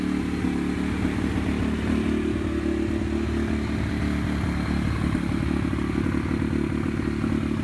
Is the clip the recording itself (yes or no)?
yes